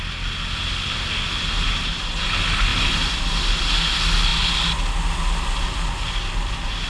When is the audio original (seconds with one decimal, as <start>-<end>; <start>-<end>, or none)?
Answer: 0.0-6.9